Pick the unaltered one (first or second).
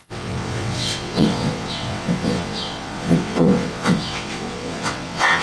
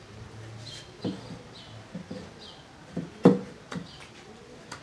second